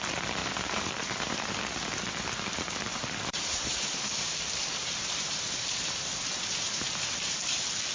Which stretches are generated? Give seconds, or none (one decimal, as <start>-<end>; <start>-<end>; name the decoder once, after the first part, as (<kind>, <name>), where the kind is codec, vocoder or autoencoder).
0.4-1.6 (vocoder, BigVGAN v2); 2.9-7.4